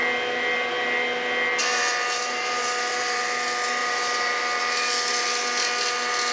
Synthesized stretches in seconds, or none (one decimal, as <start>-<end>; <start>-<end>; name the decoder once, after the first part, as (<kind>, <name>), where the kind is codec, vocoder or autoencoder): 1.7-3.2 (vocoder, BigVGAN v2); 3.8-4.6